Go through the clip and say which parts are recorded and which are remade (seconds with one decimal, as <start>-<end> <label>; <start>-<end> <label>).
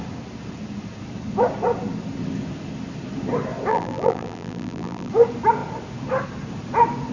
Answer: 0.0-3.7 recorded; 3.7-5.1 remade; 5.1-7.1 recorded